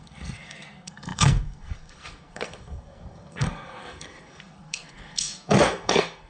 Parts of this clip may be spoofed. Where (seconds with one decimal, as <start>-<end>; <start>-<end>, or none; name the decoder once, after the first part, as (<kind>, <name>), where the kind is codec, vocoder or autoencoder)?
0.0-6.3 (codec, SNAC)